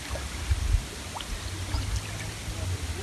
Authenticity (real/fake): real